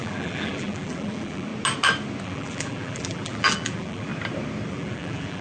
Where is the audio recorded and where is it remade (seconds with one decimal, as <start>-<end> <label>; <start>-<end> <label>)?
0.0-1.5 remade; 1.5-2.2 recorded; 2.2-4.1 remade; 4.1-4.7 recorded; 4.7-5.4 remade